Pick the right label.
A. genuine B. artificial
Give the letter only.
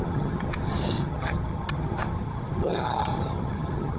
B